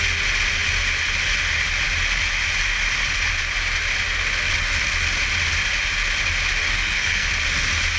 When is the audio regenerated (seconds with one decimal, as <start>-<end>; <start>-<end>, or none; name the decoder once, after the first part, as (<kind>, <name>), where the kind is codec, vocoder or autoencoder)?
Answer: 6.6-7.3 (codec, SNAC)